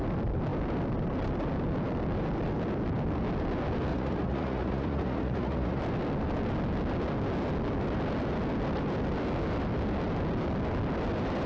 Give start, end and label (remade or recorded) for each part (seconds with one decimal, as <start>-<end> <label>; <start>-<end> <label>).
0.0-3.9 recorded; 3.9-5.8 remade; 5.8-11.5 recorded